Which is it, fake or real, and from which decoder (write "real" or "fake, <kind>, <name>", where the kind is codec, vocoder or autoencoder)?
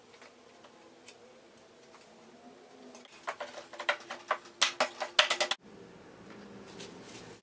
real